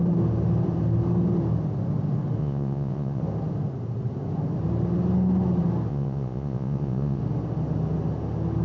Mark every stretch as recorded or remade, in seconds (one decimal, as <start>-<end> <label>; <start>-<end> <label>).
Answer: 0.0-2.4 recorded; 2.4-3.2 remade; 3.2-5.9 recorded; 5.9-7.2 remade; 7.2-8.6 recorded